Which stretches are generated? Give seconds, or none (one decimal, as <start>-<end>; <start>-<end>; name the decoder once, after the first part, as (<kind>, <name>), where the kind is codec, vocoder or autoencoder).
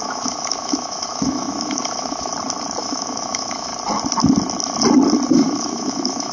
0.0-2.3 (autoencoder, DAC-VAE); 2.8-3.7; 5.3-6.3